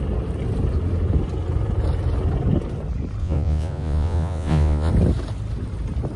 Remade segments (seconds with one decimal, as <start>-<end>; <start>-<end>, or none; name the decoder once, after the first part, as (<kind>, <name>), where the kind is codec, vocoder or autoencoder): 3.2-4.9 (vocoder, Vocos)